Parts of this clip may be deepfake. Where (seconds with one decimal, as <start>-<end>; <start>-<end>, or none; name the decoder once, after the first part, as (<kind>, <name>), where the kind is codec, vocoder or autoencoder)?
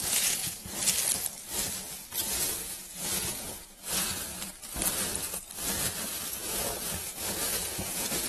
0.0-0.8 (vocoder, Vocos); 2.2-4.3; 6.4-8.3